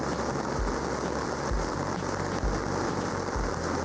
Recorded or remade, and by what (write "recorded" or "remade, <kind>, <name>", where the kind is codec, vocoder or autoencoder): recorded